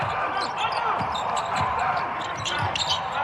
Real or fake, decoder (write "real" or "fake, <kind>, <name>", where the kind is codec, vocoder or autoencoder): real